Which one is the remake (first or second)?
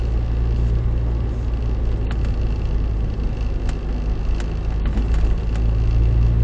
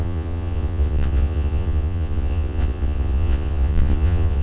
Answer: second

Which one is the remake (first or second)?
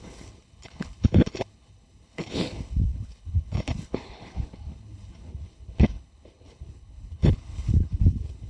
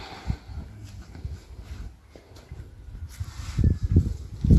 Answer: first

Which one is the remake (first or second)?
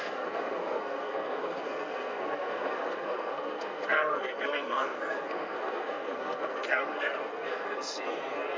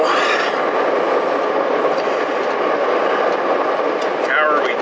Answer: first